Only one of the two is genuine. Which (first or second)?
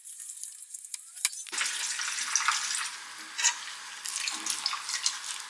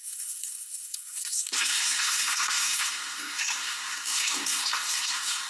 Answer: first